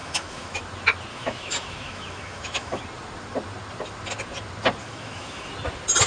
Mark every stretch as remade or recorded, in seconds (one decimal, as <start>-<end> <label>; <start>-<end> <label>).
0.0-0.6 remade; 0.6-1.1 recorded; 1.1-2.8 remade; 2.8-4.8 recorded; 4.8-5.5 remade; 5.5-6.1 recorded